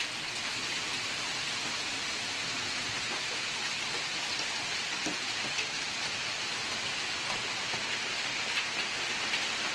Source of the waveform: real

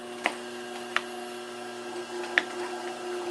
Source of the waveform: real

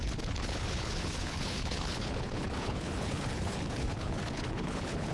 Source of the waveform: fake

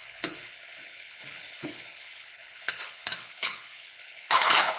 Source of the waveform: fake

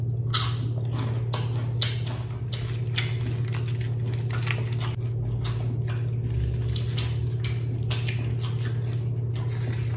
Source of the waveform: real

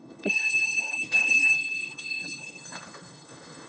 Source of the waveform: fake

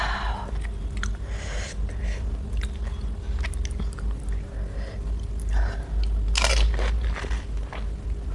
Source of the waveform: real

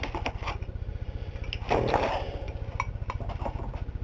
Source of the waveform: real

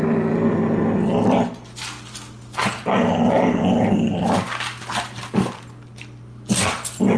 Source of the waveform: real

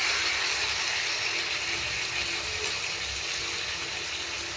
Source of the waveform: real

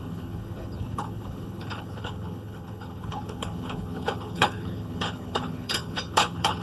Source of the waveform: fake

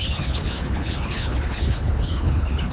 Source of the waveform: fake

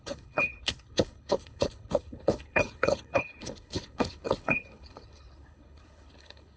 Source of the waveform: fake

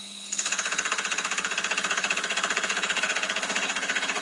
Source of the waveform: fake